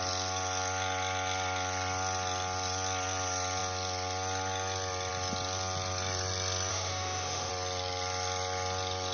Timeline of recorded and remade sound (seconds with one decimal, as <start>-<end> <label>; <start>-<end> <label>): 0.0-6.7 recorded; 6.7-7.5 remade; 7.5-9.1 recorded